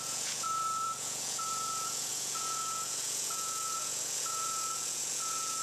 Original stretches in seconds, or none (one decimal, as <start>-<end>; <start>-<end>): none

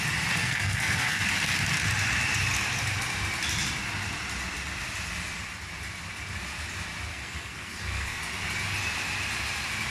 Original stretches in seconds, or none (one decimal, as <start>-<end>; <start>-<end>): 0.0-0.4; 1.2-7.1; 8.2-9.9

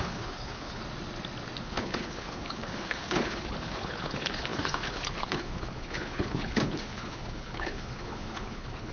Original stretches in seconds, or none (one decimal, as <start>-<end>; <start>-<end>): 0.8-1.6